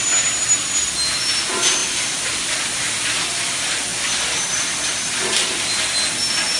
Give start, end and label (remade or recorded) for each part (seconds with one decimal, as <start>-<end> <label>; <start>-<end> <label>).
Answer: 0.0-1.8 recorded; 1.8-2.5 remade; 2.5-6.6 recorded